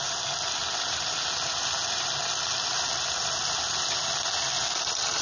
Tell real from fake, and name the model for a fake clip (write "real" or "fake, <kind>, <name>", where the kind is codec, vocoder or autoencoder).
real